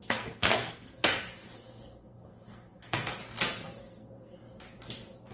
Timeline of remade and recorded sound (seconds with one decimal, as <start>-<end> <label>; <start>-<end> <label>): 0.0-3.2 remade; 3.2-3.8 recorded; 3.8-4.4 remade; 4.4-5.3 recorded